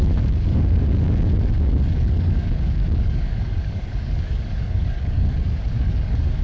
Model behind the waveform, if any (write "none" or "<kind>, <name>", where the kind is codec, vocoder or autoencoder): codec, DAC